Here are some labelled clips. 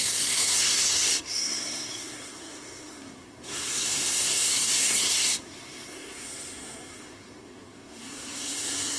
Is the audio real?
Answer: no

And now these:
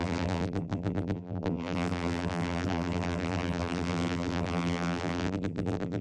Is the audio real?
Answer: no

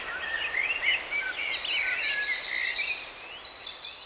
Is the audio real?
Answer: yes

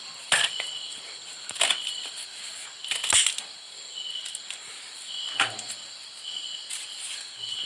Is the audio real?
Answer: yes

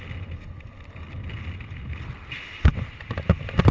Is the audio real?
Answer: yes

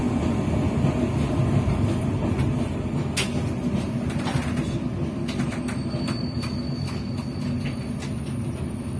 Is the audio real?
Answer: yes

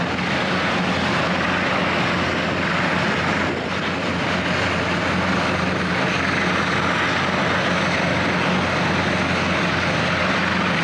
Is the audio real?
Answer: yes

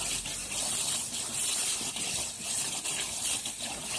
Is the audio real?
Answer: yes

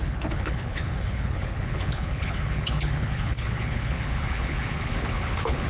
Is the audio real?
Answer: no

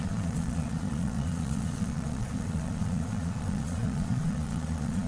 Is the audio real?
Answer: no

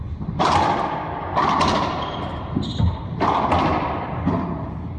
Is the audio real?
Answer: yes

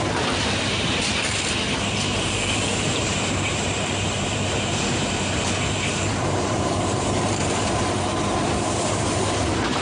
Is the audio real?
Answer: no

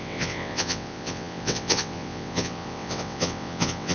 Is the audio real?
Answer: no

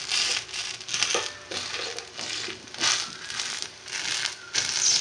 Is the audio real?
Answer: yes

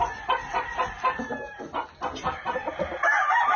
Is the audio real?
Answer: yes